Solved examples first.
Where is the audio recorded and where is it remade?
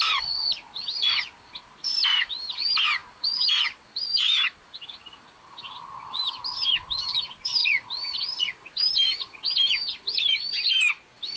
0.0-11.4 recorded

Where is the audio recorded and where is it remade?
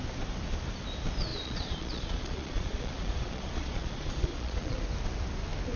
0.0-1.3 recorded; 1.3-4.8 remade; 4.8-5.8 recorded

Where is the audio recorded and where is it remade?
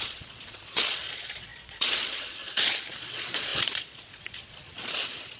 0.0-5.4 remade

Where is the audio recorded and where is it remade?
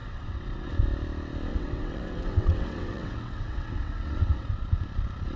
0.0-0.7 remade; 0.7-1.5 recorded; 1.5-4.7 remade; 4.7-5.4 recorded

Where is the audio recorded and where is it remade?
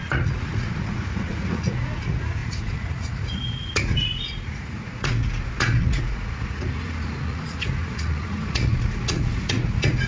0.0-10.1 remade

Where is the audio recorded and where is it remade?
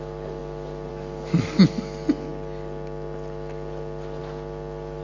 0.0-5.0 recorded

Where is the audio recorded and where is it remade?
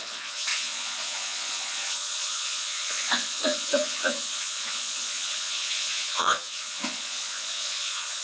0.0-8.2 remade